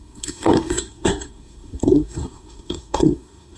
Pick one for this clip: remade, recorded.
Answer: remade